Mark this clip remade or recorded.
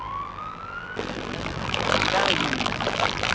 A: remade